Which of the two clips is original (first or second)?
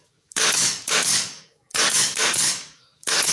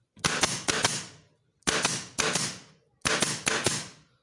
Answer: second